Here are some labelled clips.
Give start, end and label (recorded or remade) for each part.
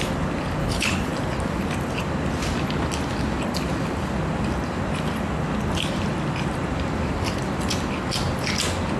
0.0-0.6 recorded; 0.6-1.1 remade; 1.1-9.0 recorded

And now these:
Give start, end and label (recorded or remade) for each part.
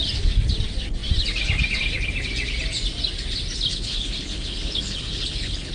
0.0-3.7 recorded; 3.7-5.7 remade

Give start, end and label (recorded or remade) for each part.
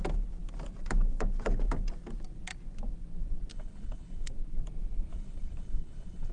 0.0-3.5 recorded; 3.5-4.3 remade; 4.3-5.1 recorded; 5.1-6.3 remade